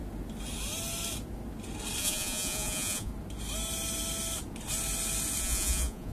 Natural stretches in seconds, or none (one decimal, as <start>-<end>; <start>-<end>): 0.0-2.0; 3.1-5.4